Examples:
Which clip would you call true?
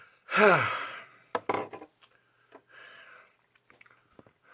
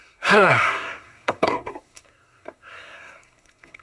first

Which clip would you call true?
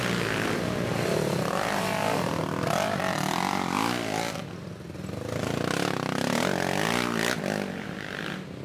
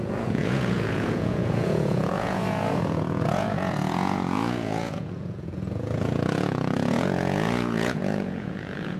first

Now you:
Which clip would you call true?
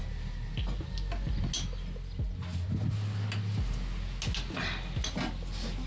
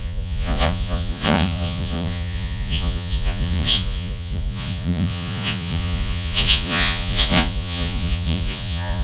first